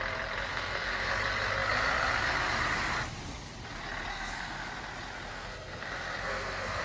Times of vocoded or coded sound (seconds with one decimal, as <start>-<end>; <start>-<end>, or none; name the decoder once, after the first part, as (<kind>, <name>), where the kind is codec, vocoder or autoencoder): 0.5-1.1 (codec, SNAC); 4.1-4.7; 5.3-6.8